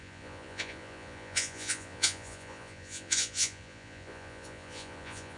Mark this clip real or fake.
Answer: fake